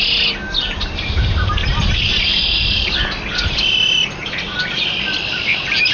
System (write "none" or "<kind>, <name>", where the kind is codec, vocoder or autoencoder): none